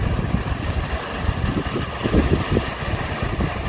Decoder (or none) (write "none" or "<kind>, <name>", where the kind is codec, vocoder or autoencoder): none